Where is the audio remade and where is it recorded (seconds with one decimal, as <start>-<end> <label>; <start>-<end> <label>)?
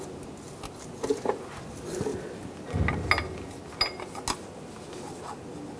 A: 0.0-5.8 recorded